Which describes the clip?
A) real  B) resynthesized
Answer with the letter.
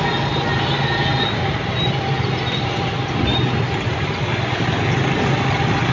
A